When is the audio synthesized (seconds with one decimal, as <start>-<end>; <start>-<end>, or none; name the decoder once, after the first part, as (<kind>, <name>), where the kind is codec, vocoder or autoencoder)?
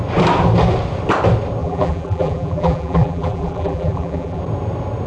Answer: 1.6-4.4 (vocoder, BigVGAN v2)